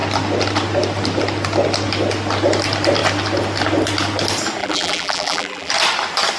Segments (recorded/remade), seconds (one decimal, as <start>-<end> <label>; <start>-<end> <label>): 0.0-4.6 recorded; 4.6-5.7 remade; 5.7-6.4 recorded

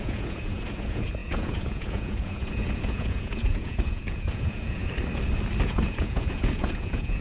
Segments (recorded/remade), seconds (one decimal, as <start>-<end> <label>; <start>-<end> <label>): 0.0-4.8 remade; 4.8-5.6 recorded; 5.6-7.2 remade

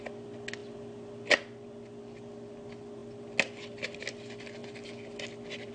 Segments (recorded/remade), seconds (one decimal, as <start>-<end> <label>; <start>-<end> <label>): 0.0-5.7 recorded

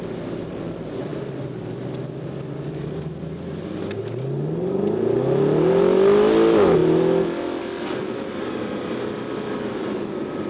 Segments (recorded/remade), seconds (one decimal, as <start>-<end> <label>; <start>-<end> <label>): 0.0-10.5 recorded

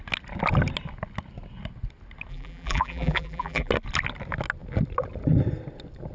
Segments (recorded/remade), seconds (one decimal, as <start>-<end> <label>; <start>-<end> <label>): 0.0-2.3 recorded; 2.3-3.7 remade; 3.7-6.1 recorded

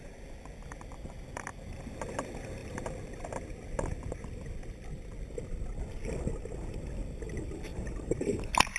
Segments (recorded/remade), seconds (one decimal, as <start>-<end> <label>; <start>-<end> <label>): 0.0-7.7 recorded; 7.7-8.8 remade